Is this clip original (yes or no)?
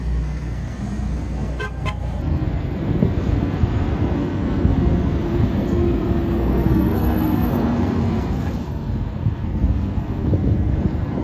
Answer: no